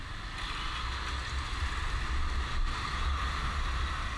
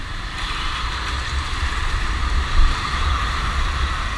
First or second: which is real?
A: first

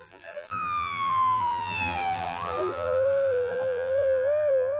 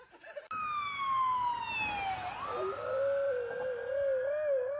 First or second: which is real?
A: second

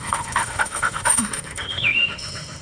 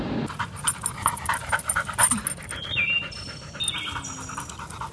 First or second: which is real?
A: second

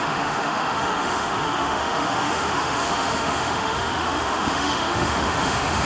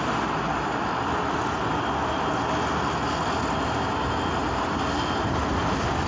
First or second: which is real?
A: second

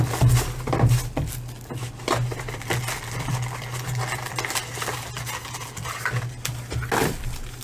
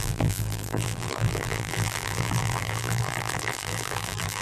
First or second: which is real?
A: first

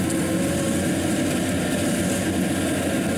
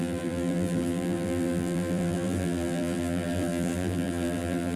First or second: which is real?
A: first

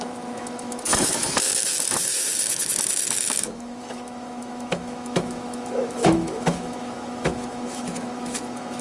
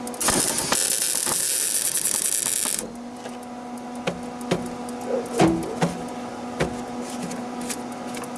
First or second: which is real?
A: second